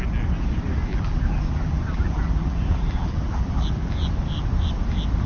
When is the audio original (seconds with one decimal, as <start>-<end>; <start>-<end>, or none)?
0.0-0.9; 4.1-5.3